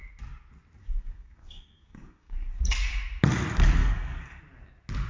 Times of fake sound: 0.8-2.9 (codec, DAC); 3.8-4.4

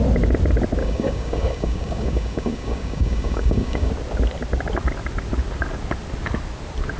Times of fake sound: 0.8-3.9 (codec, DAC)

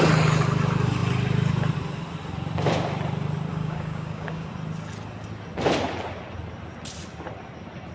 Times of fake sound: 3.5-4.5 (codec, DAC)

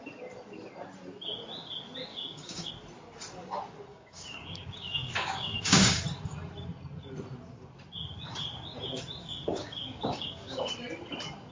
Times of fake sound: 2.1-2.7 (codec, DAC); 3.9-6.0; 9.2-10.7

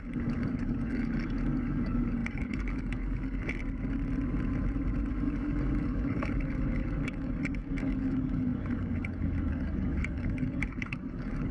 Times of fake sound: 0.0-3.6 (codec, DAC); 5.1-11.5